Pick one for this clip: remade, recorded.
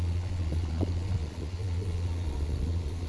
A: remade